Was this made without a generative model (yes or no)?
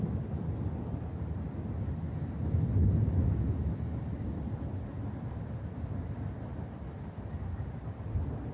yes